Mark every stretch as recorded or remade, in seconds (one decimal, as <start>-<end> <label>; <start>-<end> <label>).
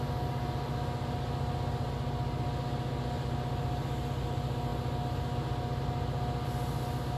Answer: 0.0-7.2 recorded